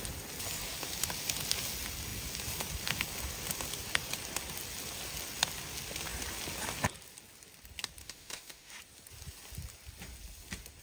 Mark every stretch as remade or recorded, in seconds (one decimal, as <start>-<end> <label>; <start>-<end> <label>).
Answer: 0.0-8.0 recorded; 8.0-8.7 remade; 8.7-10.8 recorded